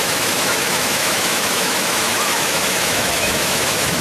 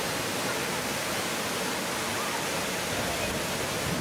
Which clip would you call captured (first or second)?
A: second